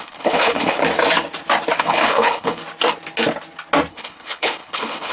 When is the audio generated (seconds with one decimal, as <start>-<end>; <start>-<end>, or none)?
0.0-0.8; 1.8-2.6; 3.9-5.1